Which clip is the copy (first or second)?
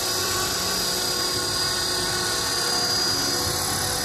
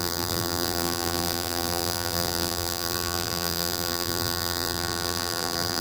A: second